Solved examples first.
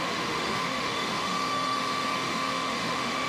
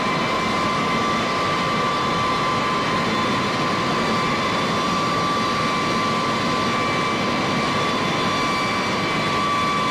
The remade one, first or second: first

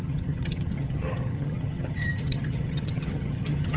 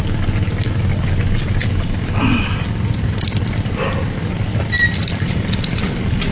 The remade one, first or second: first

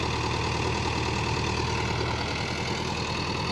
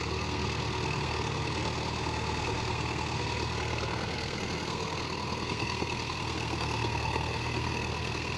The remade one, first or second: second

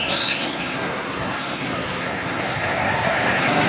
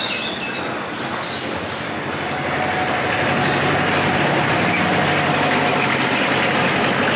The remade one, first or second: first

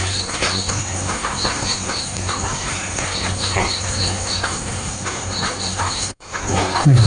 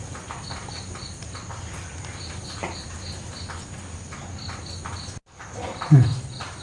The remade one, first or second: first